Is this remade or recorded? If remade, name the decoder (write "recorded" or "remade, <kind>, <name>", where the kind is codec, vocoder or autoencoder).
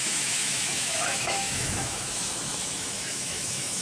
remade, autoencoder, DAC-VAE